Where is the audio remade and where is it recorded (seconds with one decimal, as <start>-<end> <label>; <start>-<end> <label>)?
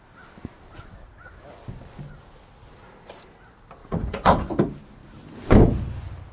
0.0-3.8 recorded; 3.8-4.5 remade; 4.5-6.3 recorded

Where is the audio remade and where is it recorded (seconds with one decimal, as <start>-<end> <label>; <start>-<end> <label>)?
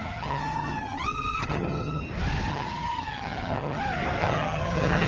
0.0-2.0 remade; 2.0-2.5 recorded; 2.5-3.8 remade; 3.8-4.2 recorded; 4.2-5.1 remade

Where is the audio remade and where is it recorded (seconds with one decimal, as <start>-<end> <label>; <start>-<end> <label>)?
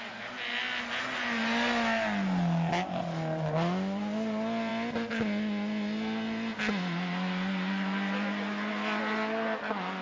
0.0-10.0 recorded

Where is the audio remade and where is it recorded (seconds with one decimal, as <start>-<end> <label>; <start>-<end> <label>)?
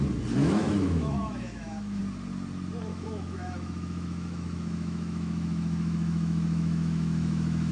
0.0-0.4 recorded; 0.4-2.0 remade; 2.0-2.9 recorded; 2.9-7.7 remade